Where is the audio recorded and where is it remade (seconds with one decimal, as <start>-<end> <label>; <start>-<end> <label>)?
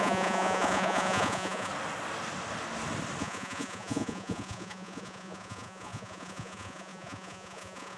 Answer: 0.0-1.7 remade; 1.7-3.2 recorded; 3.2-8.0 remade